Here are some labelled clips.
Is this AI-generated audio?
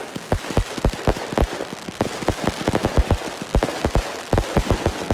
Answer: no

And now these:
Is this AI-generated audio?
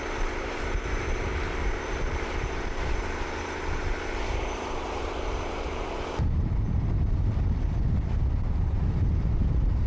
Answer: yes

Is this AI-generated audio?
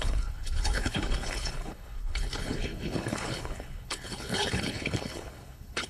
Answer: yes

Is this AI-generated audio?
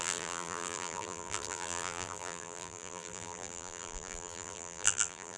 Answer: yes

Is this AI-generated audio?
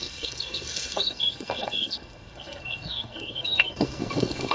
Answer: yes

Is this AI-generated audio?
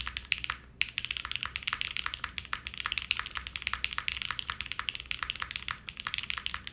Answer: no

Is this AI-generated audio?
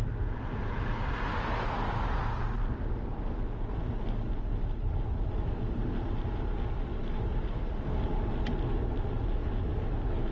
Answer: no